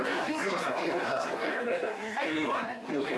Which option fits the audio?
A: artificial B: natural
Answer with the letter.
A